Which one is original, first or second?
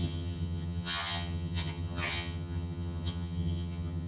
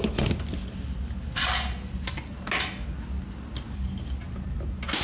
second